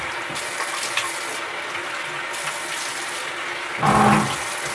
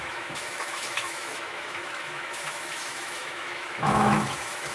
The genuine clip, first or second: first